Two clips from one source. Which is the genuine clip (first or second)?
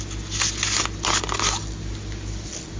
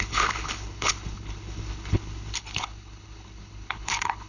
first